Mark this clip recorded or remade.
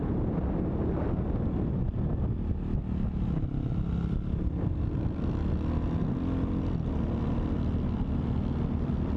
recorded